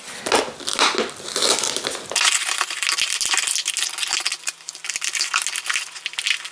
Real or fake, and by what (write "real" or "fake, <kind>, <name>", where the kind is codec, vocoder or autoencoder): real